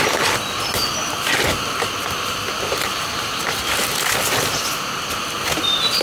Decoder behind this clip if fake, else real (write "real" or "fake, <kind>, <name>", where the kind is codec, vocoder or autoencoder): real